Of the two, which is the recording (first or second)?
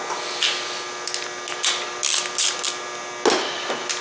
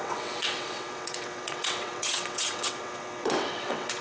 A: first